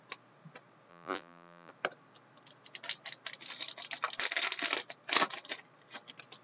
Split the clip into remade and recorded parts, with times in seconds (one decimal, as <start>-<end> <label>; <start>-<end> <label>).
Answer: 0.0-0.9 recorded; 0.9-1.7 remade; 1.7-6.4 recorded